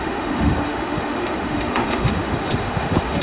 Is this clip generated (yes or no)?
yes